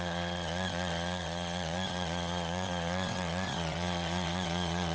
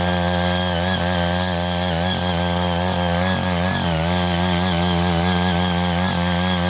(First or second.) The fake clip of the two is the first